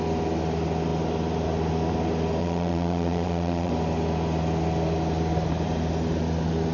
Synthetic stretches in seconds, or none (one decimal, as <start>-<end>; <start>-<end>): 2.4-3.7